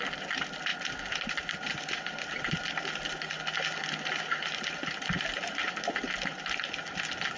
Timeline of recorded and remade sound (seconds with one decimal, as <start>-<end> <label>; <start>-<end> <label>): 0.0-7.4 recorded